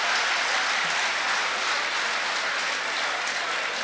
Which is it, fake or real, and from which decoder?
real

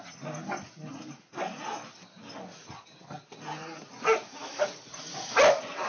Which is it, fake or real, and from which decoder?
real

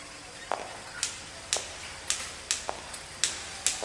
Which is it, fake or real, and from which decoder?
real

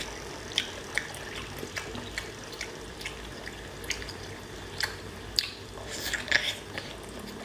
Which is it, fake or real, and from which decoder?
real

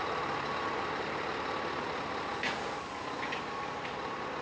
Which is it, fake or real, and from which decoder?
fake, vocoder, BigVGAN v2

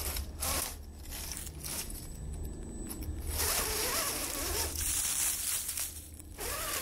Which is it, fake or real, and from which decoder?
real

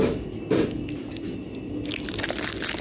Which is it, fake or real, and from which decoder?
real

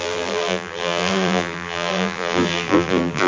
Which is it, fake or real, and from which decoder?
fake, vocoder, BigVGAN v2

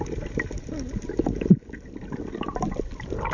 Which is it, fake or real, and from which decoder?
real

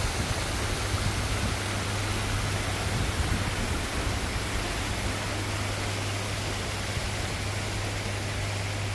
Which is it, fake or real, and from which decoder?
real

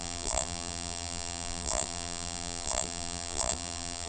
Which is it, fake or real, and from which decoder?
fake, vocoder, BigVGAN v2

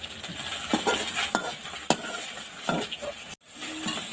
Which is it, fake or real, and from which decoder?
real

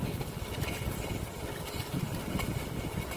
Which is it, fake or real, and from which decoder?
real